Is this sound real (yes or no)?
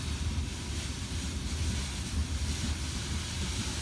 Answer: yes